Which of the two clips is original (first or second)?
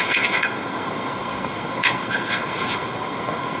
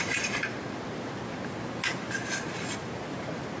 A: second